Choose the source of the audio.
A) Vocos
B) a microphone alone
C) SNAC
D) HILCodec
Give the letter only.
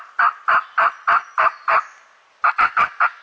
B